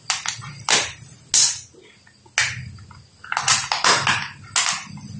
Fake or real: real